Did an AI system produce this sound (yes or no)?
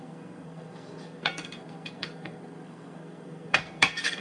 yes